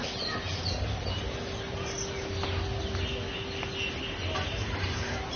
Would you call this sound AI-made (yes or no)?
no